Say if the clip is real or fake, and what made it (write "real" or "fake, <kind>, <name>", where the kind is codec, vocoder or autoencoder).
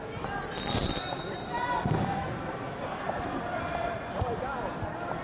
real